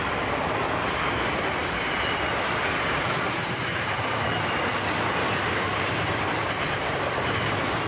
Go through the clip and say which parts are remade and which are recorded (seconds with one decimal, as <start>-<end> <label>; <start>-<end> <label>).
0.0-7.9 recorded